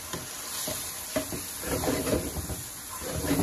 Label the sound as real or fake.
fake